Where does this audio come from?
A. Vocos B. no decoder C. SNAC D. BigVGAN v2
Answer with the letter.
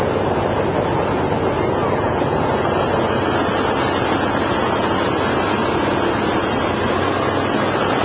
B